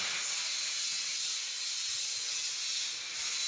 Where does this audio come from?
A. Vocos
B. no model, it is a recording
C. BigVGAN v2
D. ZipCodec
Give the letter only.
B